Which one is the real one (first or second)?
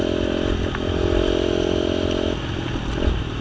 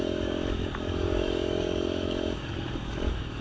first